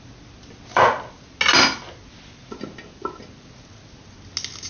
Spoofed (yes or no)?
no